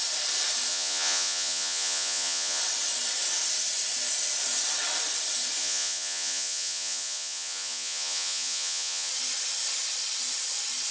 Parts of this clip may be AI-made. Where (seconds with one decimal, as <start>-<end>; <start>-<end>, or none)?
0.7-2.6; 5.6-9.1